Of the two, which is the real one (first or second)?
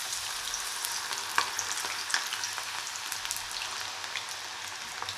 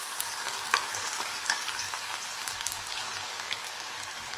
first